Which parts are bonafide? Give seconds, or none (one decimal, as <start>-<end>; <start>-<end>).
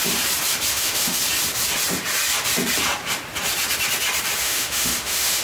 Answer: 0.0-0.7; 1.2-4.4